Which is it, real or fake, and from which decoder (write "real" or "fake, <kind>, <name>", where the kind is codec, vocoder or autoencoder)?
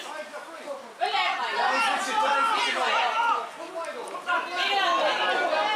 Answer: real